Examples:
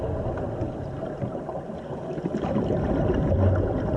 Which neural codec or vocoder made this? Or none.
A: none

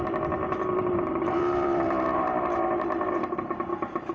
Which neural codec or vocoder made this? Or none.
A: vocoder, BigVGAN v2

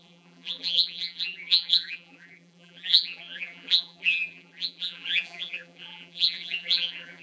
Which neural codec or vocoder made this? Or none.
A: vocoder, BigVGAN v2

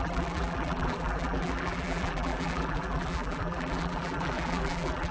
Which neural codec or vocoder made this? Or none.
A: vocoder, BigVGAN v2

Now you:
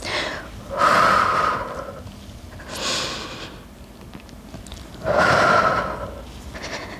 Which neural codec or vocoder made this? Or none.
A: none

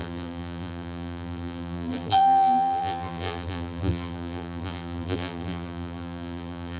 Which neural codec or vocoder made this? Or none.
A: vocoder, BigVGAN v2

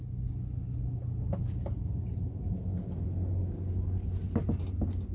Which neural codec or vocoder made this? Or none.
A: none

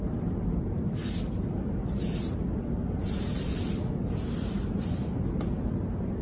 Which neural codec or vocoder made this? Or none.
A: none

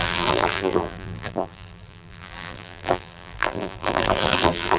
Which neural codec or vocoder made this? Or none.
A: vocoder, BigVGAN v2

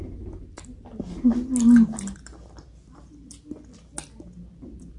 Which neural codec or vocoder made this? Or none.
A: none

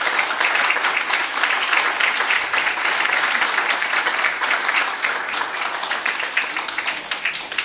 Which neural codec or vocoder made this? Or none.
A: none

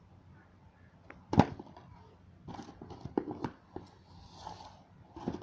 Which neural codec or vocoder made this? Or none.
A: none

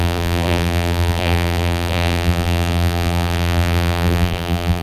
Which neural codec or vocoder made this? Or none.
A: vocoder, BigVGAN v2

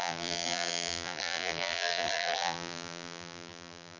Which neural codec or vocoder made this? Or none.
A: vocoder, BigVGAN v2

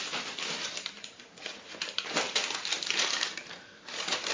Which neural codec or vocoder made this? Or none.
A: vocoder, BigVGAN v2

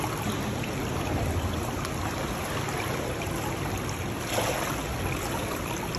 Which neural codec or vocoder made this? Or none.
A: none